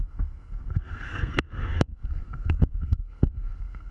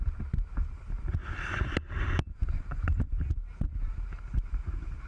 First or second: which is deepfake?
first